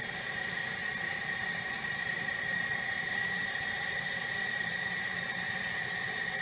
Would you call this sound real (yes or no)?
no